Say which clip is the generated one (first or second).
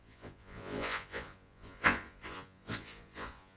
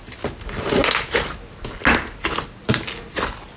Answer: first